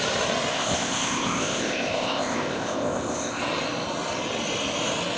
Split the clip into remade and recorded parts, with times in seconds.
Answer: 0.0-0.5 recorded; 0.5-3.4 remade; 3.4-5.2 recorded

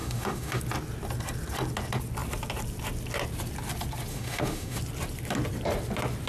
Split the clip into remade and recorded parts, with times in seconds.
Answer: 0.0-0.6 remade; 0.6-4.1 recorded; 4.1-4.8 remade; 4.8-6.3 recorded

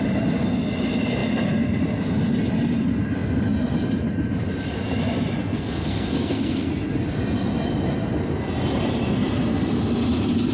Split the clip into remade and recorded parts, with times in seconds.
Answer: 0.0-5.4 recorded; 5.4-6.7 remade; 6.7-10.5 recorded